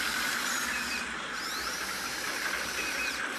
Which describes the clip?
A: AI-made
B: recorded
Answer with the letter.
A